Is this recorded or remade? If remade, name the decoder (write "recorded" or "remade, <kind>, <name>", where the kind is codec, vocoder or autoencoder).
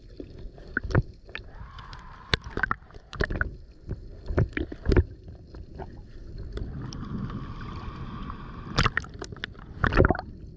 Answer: recorded